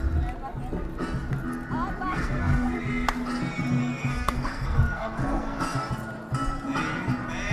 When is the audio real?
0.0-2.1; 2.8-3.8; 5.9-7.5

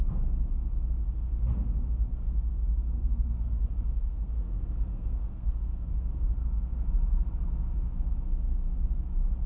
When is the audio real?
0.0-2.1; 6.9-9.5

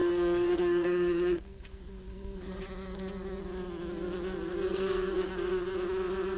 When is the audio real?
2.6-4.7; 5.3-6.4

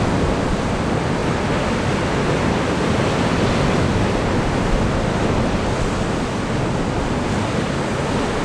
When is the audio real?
0.0-8.4

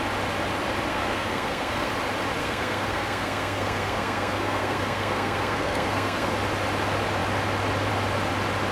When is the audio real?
0.0-0.9; 1.9-2.4; 6.3-8.7

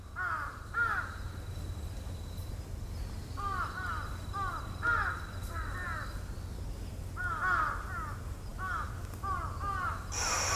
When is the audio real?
0.0-10.6

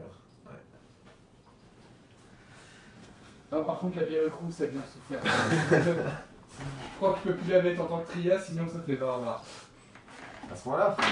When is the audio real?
0.0-3.0; 5.7-8.5; 9.4-11.1